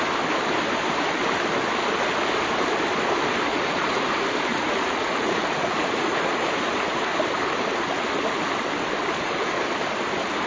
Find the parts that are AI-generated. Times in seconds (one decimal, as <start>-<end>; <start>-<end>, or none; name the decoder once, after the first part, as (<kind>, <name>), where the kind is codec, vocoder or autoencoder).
3.5-4.1 (vocoder, Vocos); 4.5-7.0